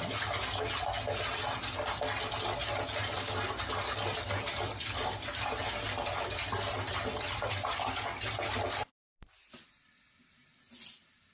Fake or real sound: real